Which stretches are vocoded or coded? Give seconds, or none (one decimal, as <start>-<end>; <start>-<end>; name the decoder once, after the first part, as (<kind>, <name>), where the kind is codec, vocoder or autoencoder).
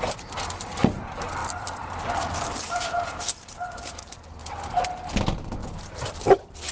1.4-4.0 (vocoder, BigVGAN v2); 5.6-6.7